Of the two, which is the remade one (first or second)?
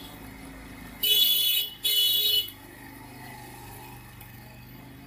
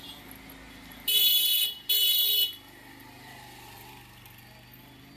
first